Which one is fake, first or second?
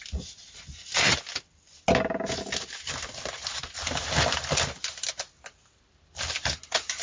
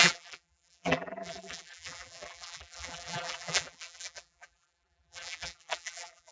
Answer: second